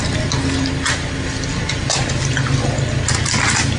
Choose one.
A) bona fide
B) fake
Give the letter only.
A